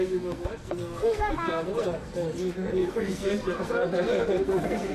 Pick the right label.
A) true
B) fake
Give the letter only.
B